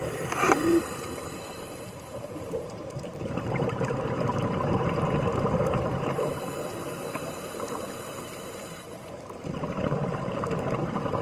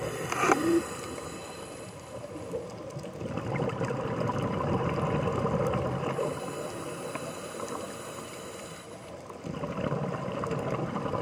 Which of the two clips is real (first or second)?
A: second